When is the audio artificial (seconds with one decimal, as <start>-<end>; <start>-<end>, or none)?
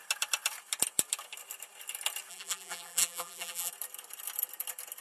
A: 2.3-3.7